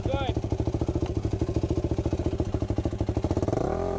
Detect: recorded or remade recorded